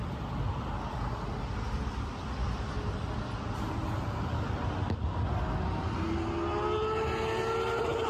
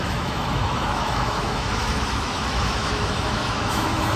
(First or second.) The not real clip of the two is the second